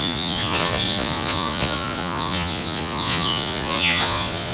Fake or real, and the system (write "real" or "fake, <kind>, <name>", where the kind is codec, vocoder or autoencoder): fake, vocoder, Vocos